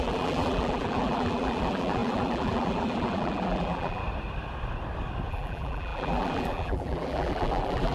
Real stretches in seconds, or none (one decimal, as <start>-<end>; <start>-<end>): 4.0-5.3